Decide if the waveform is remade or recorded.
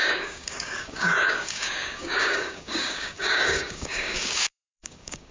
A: remade